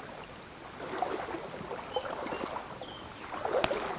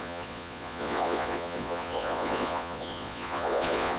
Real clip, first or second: first